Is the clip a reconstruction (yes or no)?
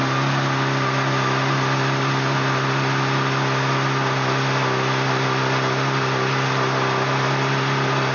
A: no